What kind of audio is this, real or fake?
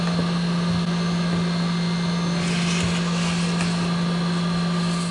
real